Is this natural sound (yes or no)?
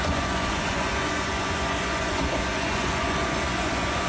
no